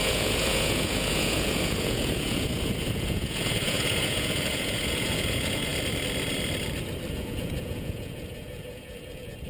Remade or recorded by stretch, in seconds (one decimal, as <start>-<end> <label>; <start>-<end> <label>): 0.0-5.7 remade; 5.7-7.1 recorded; 7.1-9.5 remade